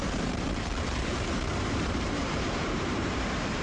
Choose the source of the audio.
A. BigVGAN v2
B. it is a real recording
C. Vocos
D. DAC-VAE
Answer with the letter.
A